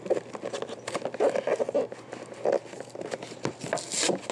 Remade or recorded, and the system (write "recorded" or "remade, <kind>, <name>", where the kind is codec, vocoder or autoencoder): recorded